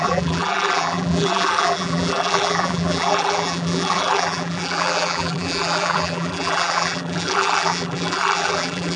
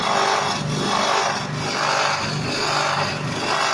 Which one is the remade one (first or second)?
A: first